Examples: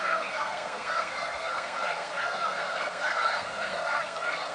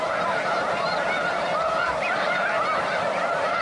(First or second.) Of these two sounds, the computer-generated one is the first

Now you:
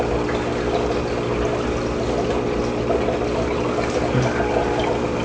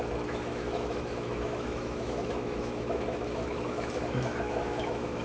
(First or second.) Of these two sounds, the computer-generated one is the second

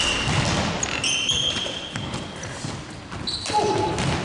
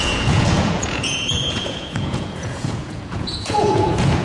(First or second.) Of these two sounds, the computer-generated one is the second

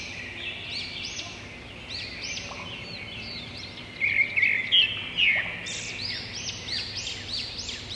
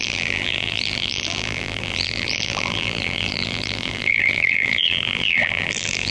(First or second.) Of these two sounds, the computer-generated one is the second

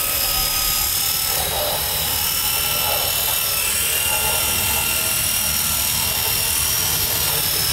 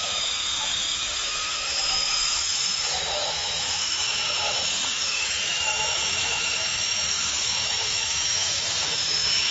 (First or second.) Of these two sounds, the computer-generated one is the second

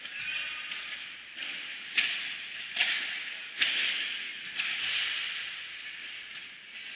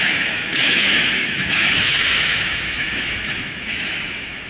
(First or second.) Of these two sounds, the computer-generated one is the second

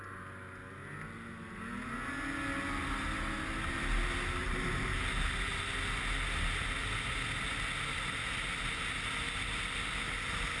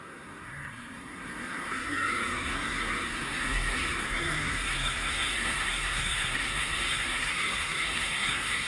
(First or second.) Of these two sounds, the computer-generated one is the second